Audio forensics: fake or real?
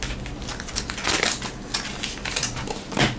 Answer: real